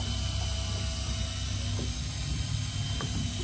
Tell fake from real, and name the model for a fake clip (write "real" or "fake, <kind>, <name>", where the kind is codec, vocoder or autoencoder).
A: real